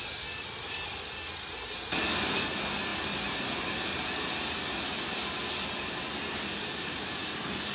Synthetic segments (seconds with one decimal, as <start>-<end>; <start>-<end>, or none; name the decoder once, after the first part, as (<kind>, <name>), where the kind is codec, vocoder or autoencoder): none